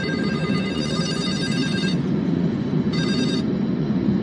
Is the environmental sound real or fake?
fake